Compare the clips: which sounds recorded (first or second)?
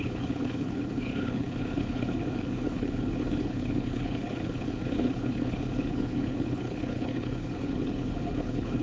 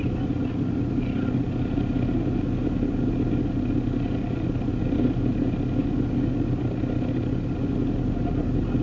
second